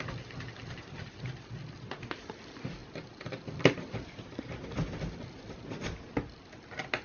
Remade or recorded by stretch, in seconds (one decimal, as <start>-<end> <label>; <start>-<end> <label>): 0.0-2.8 recorded; 2.8-3.9 remade; 3.9-7.0 recorded